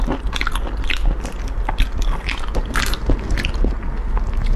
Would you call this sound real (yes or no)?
yes